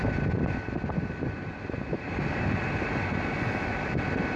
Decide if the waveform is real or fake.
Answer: real